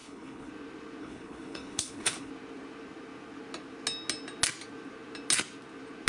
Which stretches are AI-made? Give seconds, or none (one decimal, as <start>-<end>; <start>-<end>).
0.0-0.5; 1.0-2.3